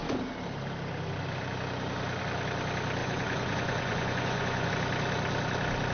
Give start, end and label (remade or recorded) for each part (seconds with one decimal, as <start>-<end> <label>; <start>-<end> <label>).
0.0-3.0 recorded; 3.0-4.7 remade; 4.7-5.9 recorded